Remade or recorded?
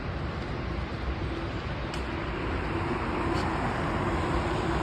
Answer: recorded